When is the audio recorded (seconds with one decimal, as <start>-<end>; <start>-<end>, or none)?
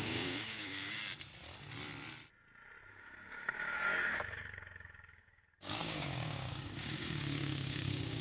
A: 1.0-2.9